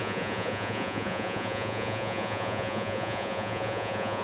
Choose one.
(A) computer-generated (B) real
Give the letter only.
A